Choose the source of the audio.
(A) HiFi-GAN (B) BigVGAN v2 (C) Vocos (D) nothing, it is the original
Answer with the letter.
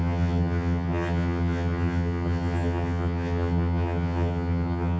A